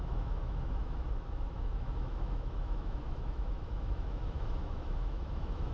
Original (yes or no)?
no